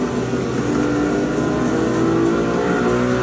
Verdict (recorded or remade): recorded